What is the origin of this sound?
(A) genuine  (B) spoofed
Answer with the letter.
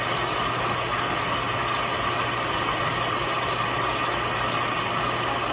A